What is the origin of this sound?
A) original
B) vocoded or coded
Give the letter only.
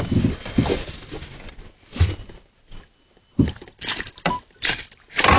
A